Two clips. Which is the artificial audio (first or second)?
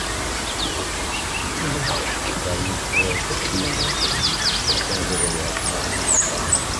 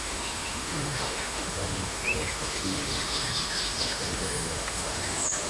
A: second